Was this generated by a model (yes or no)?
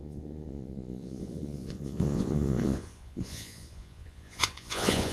yes